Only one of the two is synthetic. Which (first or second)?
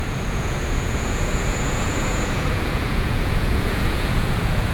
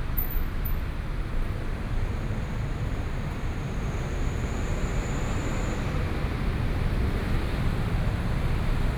first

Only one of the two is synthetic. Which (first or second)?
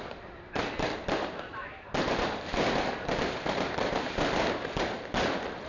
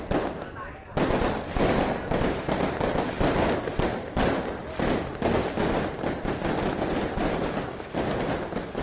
first